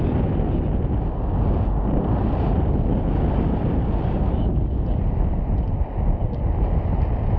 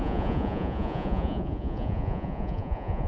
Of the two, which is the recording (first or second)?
first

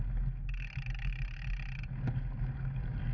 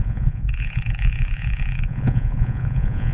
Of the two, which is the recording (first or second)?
first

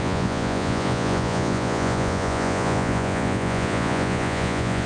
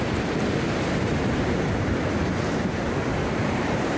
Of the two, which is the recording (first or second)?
second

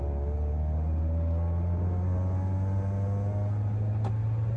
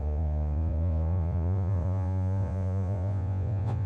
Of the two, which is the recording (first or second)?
first